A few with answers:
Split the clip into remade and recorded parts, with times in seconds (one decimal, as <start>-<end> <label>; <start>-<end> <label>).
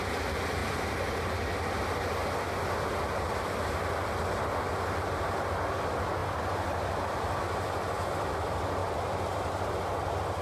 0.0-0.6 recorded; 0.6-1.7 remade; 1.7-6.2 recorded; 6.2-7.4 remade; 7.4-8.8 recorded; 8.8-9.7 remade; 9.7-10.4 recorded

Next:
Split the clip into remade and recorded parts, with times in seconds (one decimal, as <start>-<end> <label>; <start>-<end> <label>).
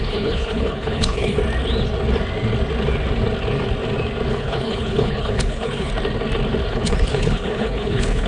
0.0-1.4 remade; 1.4-4.3 recorded; 4.3-5.9 remade; 5.9-6.7 recorded; 6.7-8.3 remade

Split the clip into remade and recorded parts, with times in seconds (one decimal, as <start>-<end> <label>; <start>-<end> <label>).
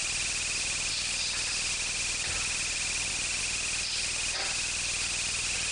0.0-5.7 recorded